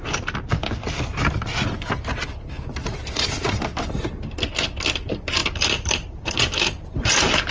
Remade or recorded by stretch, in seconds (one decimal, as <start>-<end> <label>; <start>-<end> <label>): 0.0-2.8 recorded; 2.8-4.0 remade; 4.0-5.4 recorded; 5.4-7.5 remade